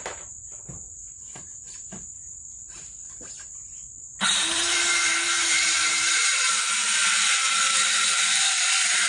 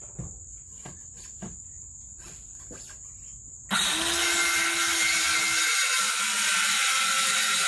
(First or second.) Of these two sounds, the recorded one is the second